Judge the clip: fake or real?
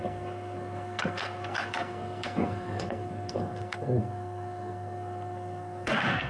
fake